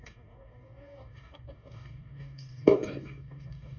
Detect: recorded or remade remade